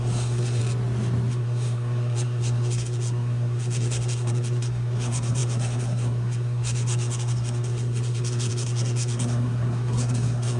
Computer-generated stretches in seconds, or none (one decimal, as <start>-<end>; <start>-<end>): 0.0-0.6; 1.3-10.6